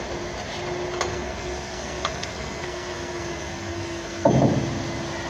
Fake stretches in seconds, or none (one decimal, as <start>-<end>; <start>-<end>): 1.1-4.3